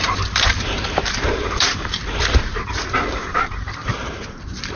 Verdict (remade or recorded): remade